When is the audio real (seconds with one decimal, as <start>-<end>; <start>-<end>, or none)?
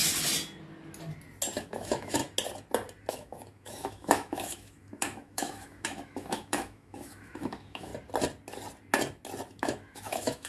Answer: 0.0-1.6; 2.2-3.1; 7.9-9.6